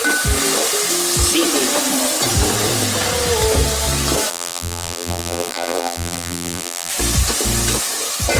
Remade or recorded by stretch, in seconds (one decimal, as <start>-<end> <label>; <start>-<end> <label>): 0.0-4.3 recorded; 4.3-6.9 remade; 6.9-8.4 recorded